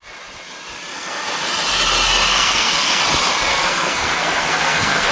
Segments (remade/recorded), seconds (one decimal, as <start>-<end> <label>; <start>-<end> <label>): 0.0-0.9 recorded; 0.9-1.5 remade; 1.5-2.3 recorded; 2.3-3.0 remade; 3.0-3.5 recorded; 3.5-5.1 remade